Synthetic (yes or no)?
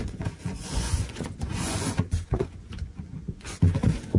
yes